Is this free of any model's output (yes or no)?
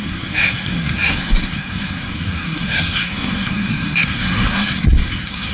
no